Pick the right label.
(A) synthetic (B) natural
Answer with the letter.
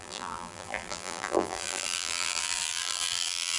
A